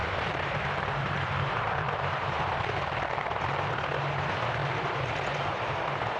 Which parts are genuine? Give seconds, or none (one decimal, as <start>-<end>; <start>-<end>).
3.7-4.6; 5.2-6.2